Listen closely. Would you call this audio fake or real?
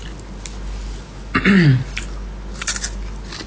real